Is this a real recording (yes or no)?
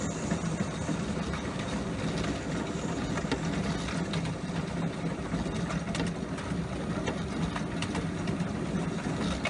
yes